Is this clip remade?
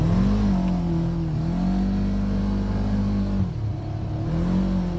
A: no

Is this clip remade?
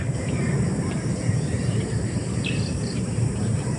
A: yes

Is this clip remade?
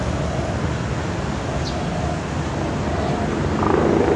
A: no